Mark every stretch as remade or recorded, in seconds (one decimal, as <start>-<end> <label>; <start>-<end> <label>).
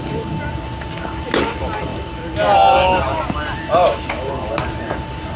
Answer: 0.0-5.4 recorded